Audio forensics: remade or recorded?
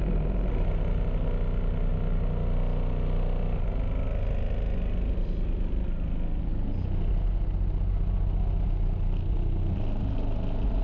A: recorded